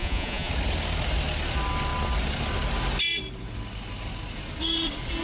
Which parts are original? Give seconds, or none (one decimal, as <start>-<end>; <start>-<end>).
0.5-5.2